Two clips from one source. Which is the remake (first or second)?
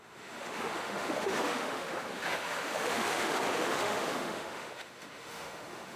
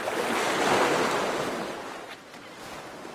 first